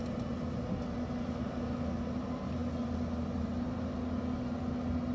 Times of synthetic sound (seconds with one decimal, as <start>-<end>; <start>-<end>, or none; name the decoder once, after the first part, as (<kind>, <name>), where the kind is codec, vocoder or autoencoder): none